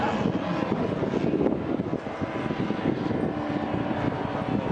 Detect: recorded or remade recorded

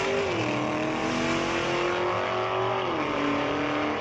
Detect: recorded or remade recorded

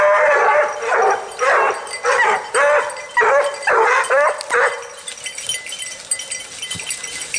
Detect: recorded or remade recorded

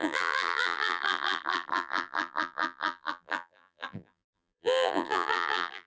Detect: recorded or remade remade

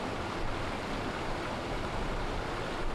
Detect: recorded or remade recorded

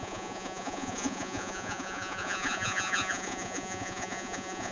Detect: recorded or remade remade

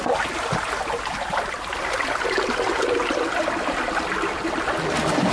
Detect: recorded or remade recorded